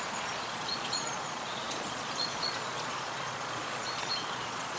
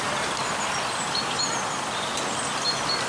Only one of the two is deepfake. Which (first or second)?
first